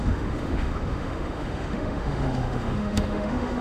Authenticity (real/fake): fake